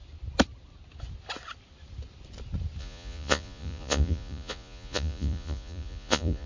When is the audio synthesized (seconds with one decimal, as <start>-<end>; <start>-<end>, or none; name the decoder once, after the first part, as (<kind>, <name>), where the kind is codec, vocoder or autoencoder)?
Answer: 2.8-6.5 (vocoder, Vocos)